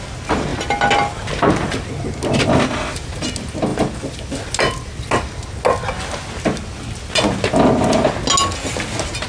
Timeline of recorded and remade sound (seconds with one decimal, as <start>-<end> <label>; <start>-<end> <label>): 0.0-9.3 recorded